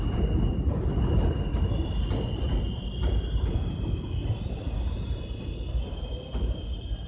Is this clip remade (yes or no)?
no